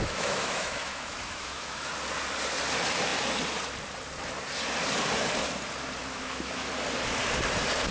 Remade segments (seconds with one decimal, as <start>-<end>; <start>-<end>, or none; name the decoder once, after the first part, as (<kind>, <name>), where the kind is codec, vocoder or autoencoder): 0.0-1.9 (autoencoder, DAC-VAE); 6.0-6.7